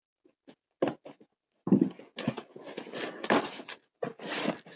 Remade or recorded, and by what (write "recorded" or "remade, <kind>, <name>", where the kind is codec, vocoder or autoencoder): recorded